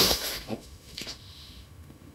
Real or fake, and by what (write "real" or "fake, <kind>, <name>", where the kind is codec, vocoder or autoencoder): fake, autoencoder, DAC-VAE